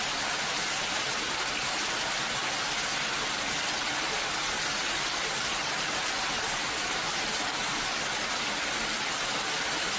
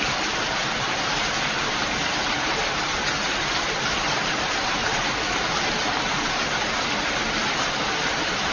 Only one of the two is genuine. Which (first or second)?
first